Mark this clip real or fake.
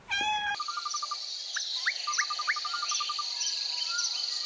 real